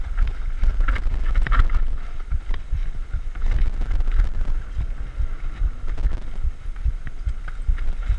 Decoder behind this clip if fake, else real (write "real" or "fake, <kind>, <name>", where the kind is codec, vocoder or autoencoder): real